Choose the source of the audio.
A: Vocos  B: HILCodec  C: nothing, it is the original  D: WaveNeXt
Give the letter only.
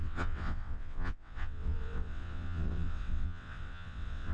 D